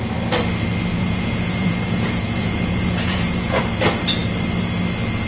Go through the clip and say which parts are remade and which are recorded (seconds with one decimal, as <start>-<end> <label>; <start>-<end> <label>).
0.0-0.9 recorded; 0.9-3.6 remade; 3.6-5.3 recorded